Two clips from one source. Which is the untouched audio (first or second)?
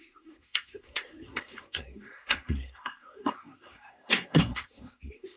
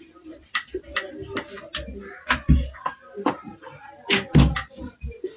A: second